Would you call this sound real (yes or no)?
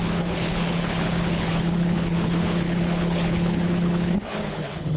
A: no